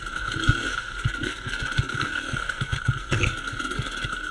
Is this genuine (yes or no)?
no